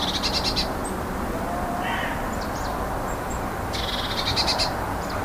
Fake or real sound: real